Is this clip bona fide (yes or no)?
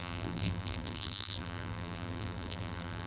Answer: no